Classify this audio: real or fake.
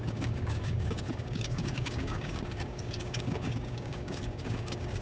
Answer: fake